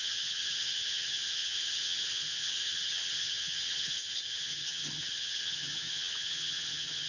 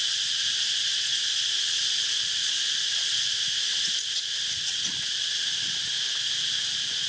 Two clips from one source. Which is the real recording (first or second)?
second